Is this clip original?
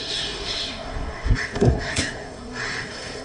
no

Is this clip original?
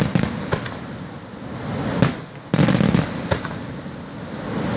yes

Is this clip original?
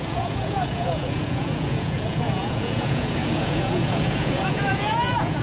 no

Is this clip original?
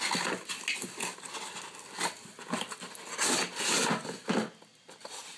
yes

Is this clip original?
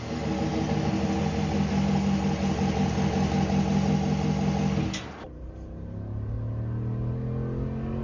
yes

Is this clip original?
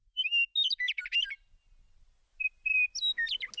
yes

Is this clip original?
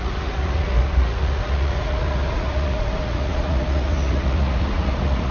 no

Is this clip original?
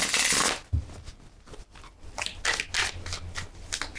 yes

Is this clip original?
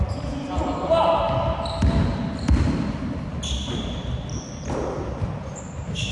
yes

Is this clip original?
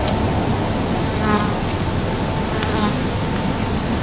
yes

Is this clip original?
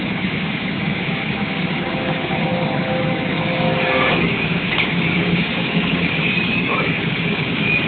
no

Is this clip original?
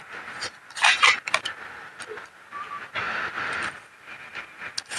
yes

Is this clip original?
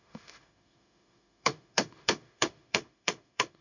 no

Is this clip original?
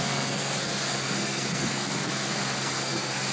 no